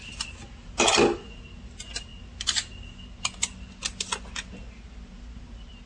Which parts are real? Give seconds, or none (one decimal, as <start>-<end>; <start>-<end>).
0.0-5.9